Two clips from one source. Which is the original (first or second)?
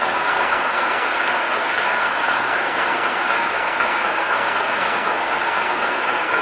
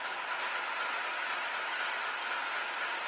second